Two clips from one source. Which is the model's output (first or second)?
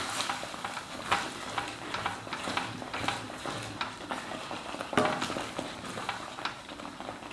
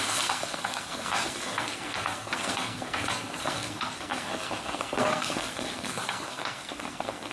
second